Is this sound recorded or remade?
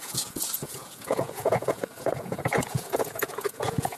remade